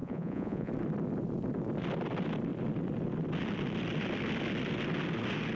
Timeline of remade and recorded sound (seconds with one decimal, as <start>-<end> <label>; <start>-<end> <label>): 0.0-0.7 remade; 0.7-5.5 recorded